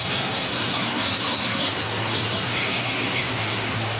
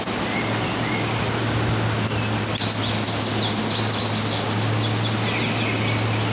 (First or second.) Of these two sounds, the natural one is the second